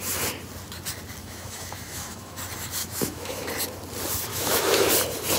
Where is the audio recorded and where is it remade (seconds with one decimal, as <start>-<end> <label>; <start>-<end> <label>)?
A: 0.0-1.2 recorded; 1.2-2.4 remade; 2.4-2.8 recorded; 2.8-3.5 remade; 3.5-4.3 recorded; 4.3-4.9 remade; 4.9-5.4 recorded